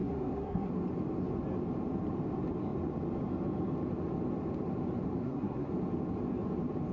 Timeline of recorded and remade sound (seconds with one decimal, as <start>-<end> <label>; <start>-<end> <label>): 0.0-0.7 remade; 0.7-5.2 recorded; 5.2-5.7 remade; 5.7-6.9 recorded